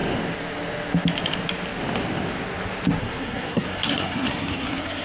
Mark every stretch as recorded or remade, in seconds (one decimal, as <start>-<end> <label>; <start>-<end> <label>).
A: 0.0-3.0 recorded; 3.0-5.0 remade